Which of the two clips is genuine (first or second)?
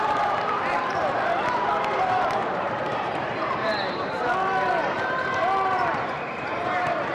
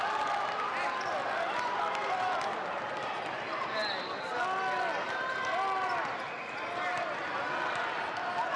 second